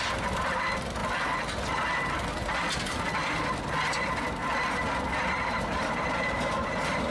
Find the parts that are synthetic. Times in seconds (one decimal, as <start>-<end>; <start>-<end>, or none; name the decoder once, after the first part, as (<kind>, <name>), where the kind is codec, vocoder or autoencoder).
0.0-1.0 (vocoder, BigVGAN v2); 5.3-7.1